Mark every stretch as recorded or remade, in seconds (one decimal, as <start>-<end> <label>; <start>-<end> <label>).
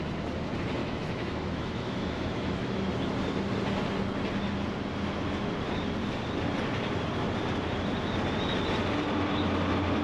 0.0-0.8 recorded; 0.8-2.9 remade; 2.9-10.0 recorded